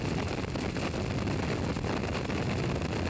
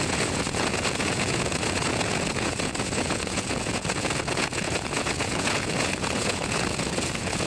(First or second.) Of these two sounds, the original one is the first